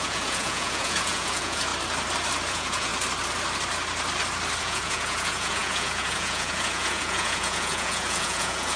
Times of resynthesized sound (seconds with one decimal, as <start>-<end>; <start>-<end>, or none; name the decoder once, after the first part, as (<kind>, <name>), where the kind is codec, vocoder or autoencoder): 0.0-1.7 (vocoder, Vocos); 2.5-2.9; 4.6-8.8

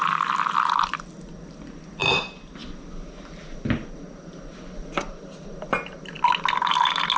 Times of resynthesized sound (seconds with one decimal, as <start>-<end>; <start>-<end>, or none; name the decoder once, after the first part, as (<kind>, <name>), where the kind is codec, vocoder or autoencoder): none

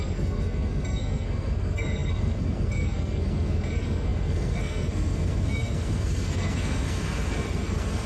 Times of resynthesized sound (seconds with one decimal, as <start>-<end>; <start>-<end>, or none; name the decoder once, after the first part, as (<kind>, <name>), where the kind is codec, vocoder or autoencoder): 0.0-8.1 (codec, SNAC)

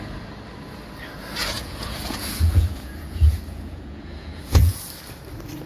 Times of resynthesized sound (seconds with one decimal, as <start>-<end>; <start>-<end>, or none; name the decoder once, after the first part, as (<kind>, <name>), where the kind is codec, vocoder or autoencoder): 1.4-4.8 (vocoder, Vocos)

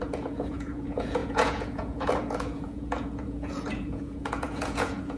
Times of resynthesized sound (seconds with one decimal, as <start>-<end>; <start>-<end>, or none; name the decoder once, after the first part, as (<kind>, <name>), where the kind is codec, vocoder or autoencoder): 0.0-5.2 (vocoder, Vocos)

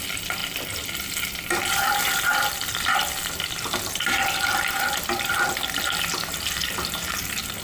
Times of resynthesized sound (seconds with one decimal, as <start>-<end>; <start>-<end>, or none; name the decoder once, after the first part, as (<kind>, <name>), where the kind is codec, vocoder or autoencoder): none

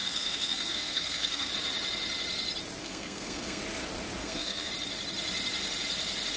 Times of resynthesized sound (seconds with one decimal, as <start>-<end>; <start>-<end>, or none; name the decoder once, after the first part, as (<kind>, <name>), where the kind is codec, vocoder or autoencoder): 0.0-1.5 (codec, SNAC); 2.8-3.6; 4.2-4.7